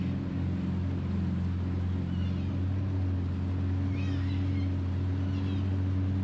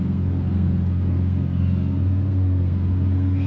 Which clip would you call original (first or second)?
first